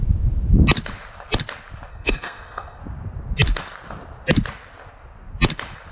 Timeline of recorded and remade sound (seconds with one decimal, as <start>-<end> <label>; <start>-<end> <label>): 0.0-1.9 recorded; 1.9-2.8 remade; 2.8-5.9 recorded